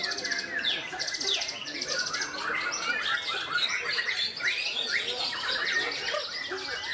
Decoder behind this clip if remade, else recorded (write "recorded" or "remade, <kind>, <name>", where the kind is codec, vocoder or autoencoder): recorded